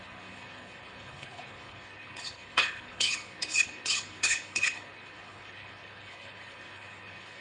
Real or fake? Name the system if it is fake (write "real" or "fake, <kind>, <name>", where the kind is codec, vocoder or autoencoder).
fake, codec, HILCodec